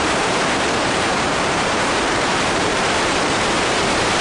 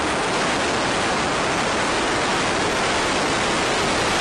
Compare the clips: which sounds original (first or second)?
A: second